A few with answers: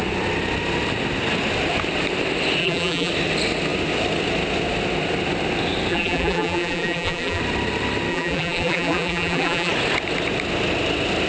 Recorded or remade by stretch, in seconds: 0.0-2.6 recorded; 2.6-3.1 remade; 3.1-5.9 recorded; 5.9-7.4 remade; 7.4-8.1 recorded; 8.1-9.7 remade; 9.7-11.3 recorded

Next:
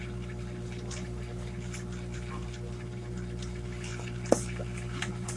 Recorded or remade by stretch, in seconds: 0.0-5.4 recorded

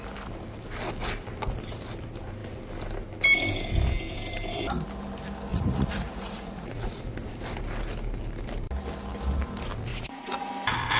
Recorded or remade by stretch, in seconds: 0.0-5.5 recorded; 5.5-7.0 remade; 7.0-9.9 recorded; 9.9-10.5 remade; 10.5-11.0 recorded

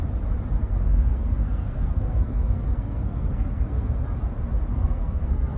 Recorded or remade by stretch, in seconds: 0.0-0.6 recorded; 0.6-4.0 remade; 4.0-4.7 recorded; 4.7-5.6 remade

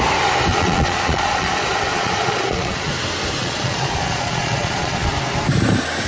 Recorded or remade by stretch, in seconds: 0.0-0.5 recorded; 0.5-2.9 remade; 2.9-3.4 recorded; 3.4-5.1 remade; 5.1-6.1 recorded

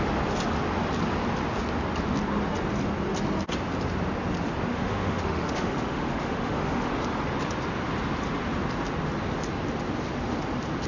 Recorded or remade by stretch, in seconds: 0.0-4.7 recorded; 4.7-6.9 remade; 6.9-10.9 recorded